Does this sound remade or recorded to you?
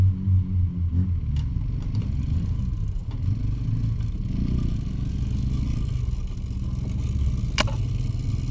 recorded